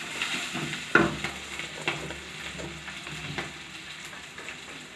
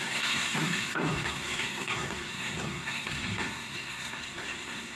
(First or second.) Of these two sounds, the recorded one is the first